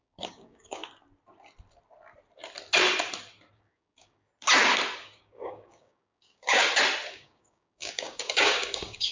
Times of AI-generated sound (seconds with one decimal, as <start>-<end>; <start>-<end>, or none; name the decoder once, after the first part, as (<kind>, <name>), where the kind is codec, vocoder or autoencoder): 0.0-0.8 (codec, DAC); 3.5-4.3; 5.0-6.6; 7.1-9.1